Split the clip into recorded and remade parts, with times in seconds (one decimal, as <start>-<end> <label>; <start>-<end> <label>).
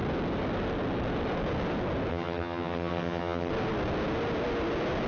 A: 0.0-2.1 recorded; 2.1-3.5 remade; 3.5-5.1 recorded